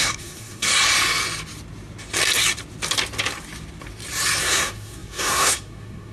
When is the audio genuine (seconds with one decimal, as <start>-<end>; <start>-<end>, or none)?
0.7-4.4

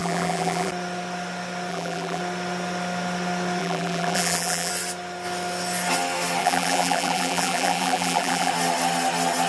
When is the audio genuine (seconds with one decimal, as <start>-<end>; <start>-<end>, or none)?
0.7-1.7; 2.2-3.6; 4.7-6.4; 8.5-9.5

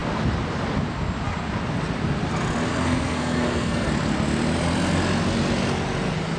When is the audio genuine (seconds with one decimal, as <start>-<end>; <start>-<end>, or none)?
0.0-2.7; 3.9-6.4

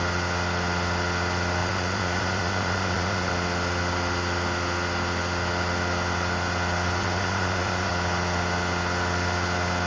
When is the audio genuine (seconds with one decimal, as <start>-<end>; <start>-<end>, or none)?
0.0-1.6; 3.3-7.0; 7.9-9.9

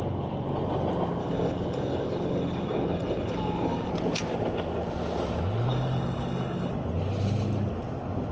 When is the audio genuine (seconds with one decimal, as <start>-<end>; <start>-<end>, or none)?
0.0-1.2; 3.9-5.7; 6.7-8.3

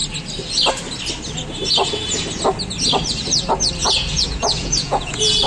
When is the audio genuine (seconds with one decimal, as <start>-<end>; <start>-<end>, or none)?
0.0-3.8

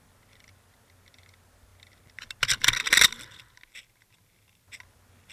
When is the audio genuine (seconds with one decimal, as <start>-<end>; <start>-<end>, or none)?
0.0-5.3